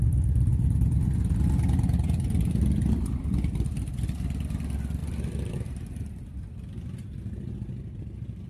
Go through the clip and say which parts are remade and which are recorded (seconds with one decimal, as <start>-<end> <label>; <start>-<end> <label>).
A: 0.0-8.5 recorded

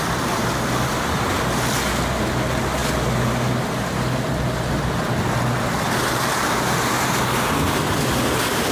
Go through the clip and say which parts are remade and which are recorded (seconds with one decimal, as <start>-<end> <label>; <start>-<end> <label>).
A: 0.0-8.7 recorded